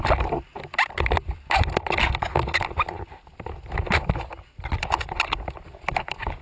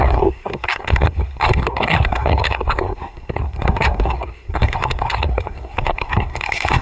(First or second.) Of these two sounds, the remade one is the second